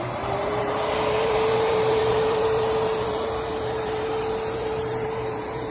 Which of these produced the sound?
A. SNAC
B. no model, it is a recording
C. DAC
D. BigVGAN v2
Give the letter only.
D